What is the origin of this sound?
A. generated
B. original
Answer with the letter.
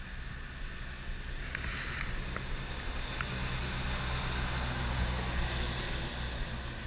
B